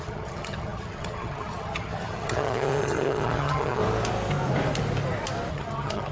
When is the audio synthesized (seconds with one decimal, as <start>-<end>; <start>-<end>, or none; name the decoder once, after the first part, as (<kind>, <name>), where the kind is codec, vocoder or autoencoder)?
0.0-3.8 (vocoder, HiFi-GAN); 5.5-6.1